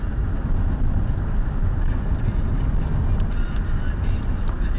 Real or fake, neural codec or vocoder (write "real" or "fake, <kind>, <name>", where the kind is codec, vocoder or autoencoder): real